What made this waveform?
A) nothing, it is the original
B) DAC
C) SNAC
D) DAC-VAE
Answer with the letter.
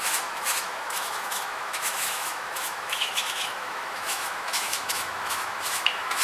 D